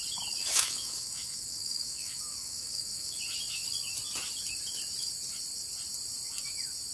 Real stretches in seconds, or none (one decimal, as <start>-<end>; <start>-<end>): 0.0-0.4; 3.2-6.9